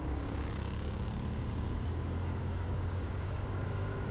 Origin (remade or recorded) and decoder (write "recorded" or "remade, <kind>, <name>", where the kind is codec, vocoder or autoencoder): remade, codec, DAC